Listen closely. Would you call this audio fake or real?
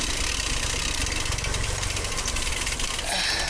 real